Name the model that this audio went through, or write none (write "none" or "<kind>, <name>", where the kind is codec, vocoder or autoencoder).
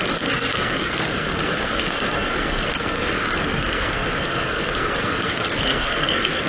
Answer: codec, SNAC